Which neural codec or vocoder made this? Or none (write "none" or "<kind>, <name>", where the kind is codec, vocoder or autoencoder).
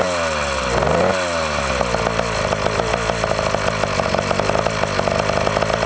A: none